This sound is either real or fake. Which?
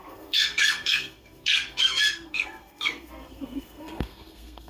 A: fake